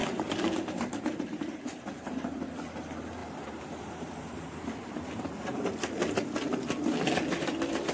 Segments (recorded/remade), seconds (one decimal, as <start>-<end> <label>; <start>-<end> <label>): 0.0-2.6 remade; 2.6-3.2 recorded; 3.2-5.7 remade; 5.7-7.9 recorded